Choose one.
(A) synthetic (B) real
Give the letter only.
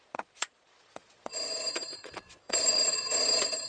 A